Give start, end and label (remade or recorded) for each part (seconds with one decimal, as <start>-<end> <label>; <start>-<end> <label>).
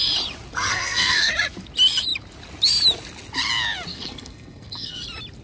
0.0-0.7 recorded; 0.7-1.3 remade; 1.3-3.9 recorded; 3.9-5.0 remade; 5.0-5.4 recorded